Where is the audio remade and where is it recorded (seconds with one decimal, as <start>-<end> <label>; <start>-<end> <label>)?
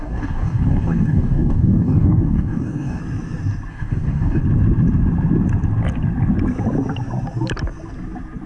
0.0-3.0 remade; 3.0-3.7 recorded; 3.7-4.4 remade; 4.4-8.5 recorded